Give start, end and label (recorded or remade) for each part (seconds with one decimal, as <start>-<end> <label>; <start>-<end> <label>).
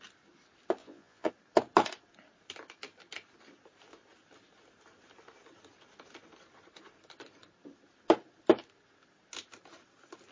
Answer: 0.0-0.8 recorded; 0.8-1.3 remade; 1.3-10.3 recorded